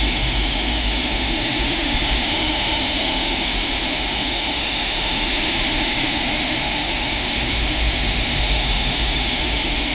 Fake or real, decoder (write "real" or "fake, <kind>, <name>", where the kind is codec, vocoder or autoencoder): fake, autoencoder, DAC-VAE